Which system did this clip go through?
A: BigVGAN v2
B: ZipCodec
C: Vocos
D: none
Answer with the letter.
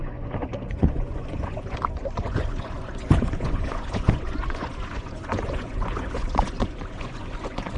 C